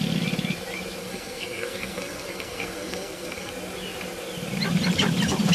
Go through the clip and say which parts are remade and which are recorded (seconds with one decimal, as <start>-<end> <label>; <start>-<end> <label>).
0.0-1.0 recorded; 1.0-3.5 remade; 3.5-5.5 recorded